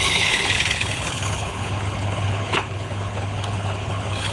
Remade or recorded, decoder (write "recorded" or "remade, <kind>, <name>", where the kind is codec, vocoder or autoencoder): remade, codec, HILCodec